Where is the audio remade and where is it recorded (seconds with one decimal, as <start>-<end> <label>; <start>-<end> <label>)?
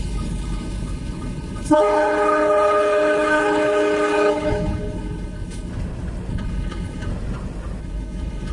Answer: 0.0-5.7 remade; 5.7-6.3 recorded; 6.3-7.1 remade; 7.1-7.8 recorded; 7.8-8.5 remade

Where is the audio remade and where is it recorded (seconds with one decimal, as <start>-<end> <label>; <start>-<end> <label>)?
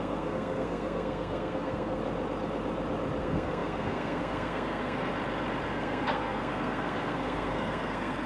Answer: 0.0-2.0 remade; 2.0-3.2 recorded; 3.2-5.1 remade; 5.1-5.7 recorded; 5.7-8.3 remade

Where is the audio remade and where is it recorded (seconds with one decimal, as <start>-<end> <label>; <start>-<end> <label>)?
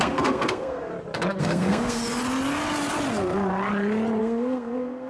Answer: 0.0-0.9 remade; 0.9-1.4 recorded; 1.4-2.0 remade; 2.0-4.2 recorded; 4.2-5.1 remade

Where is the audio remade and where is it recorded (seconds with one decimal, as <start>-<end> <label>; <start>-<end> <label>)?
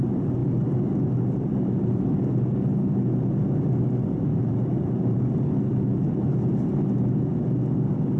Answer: 0.0-1.5 recorded; 1.5-2.0 remade; 2.0-4.3 recorded; 4.3-5.2 remade; 5.2-8.2 recorded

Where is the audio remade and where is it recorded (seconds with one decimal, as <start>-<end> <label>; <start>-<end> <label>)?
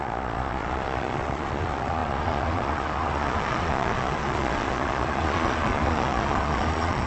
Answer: 0.0-7.1 remade